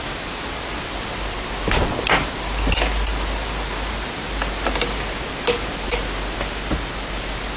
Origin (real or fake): real